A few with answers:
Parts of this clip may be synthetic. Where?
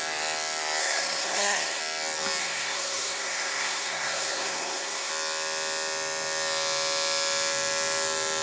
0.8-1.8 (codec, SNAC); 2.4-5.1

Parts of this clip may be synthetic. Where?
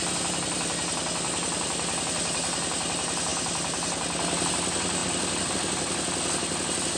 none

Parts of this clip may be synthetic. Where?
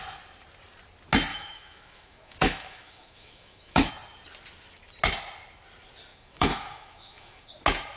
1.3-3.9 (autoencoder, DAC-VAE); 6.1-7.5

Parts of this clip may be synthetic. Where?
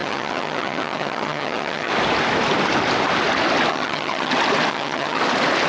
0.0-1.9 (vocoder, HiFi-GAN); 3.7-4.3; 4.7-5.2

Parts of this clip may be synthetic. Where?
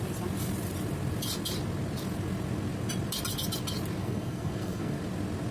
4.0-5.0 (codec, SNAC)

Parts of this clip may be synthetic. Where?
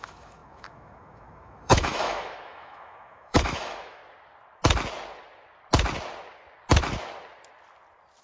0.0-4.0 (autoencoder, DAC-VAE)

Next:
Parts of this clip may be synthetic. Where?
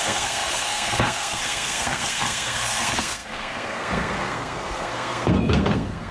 0.0-6.1 (codec, SNAC)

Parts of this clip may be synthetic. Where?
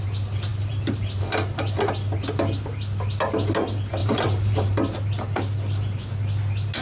0.5-1.8 (vocoder, BigVGAN v2); 4.0-4.8